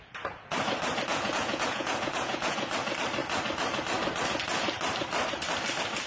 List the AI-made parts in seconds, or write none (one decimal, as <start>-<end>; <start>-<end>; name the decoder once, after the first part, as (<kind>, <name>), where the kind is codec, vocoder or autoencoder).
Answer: 1.1-2.7 (vocoder, Vocos)